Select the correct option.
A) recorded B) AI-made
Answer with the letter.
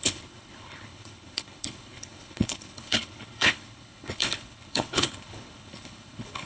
B